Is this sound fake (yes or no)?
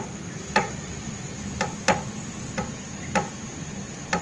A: no